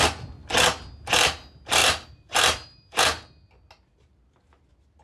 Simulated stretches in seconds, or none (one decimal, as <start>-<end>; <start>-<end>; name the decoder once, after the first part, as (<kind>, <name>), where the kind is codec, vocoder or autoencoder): 1.8-3.0 (vocoder, BigVGAN v2)